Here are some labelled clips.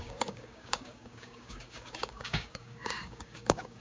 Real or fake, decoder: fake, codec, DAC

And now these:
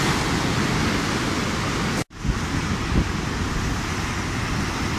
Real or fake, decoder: real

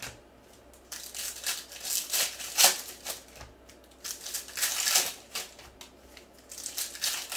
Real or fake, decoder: real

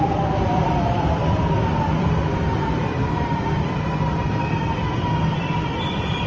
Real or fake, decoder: fake, vocoder, BigVGAN v2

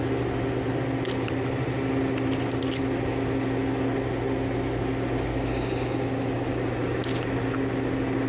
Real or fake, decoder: real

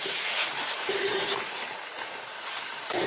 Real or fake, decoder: fake, vocoder, BigVGAN v2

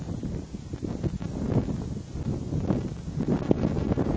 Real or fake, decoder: real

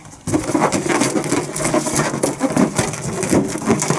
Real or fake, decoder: real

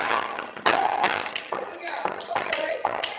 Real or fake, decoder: fake, vocoder, HiFi-GAN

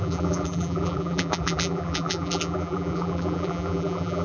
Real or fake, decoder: fake, vocoder, BigVGAN v2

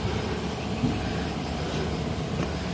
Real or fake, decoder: real